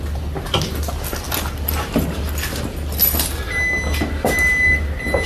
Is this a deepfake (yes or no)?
no